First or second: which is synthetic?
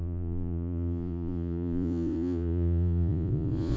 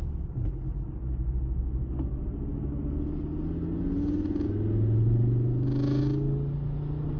first